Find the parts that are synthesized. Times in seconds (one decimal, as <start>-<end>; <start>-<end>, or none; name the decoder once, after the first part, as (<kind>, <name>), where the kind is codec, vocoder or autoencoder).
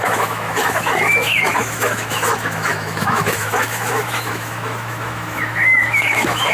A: 0.0-6.5 (autoencoder, DAC-VAE)